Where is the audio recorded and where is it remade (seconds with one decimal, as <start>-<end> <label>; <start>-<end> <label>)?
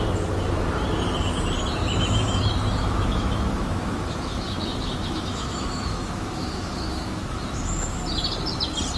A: 0.0-1.8 recorded; 1.8-2.4 remade; 2.4-2.8 recorded; 2.8-8.0 remade; 8.0-9.0 recorded